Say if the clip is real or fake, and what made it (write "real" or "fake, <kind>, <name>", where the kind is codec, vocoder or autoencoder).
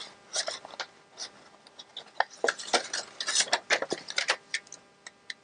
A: real